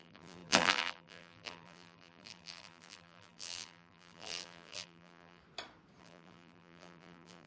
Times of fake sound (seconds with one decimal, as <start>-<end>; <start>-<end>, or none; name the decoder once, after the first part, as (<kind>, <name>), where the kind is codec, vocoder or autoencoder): 0.0-5.4 (vocoder, BigVGAN v2); 6.0-7.5